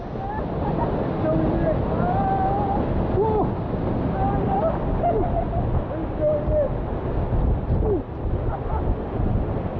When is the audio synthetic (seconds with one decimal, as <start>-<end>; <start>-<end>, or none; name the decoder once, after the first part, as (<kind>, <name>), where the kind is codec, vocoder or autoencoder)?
none